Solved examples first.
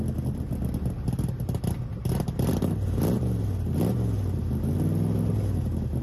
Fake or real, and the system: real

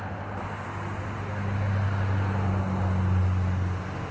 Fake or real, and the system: real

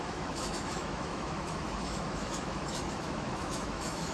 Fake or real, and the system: fake, autoencoder, DAC-VAE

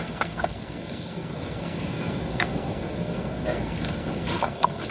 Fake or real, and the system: fake, codec, SNAC